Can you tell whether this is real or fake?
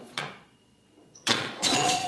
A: fake